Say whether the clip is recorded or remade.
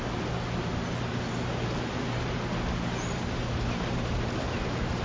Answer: recorded